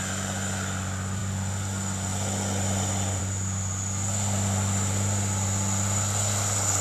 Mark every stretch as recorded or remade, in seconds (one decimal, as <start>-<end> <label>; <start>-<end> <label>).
0.0-6.8 recorded